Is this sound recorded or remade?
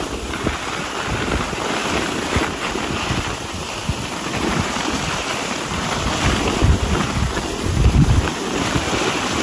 remade